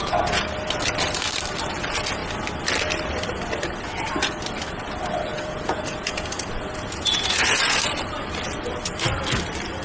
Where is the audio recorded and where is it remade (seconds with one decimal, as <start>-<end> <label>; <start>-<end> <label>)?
0.0-0.5 remade; 0.5-5.3 recorded; 5.3-7.8 remade; 7.8-9.8 recorded